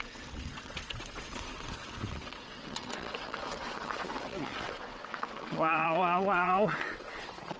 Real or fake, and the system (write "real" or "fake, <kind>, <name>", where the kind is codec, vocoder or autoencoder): fake, vocoder, WaveNeXt